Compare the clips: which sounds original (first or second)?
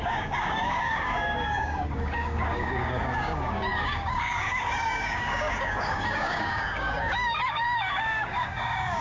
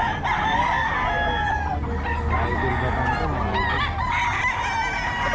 second